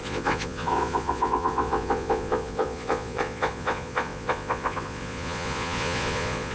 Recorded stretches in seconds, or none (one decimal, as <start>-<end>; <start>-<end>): none